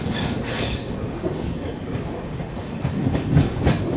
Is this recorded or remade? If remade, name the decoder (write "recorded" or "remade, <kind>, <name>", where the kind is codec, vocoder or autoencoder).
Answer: remade, codec, DAC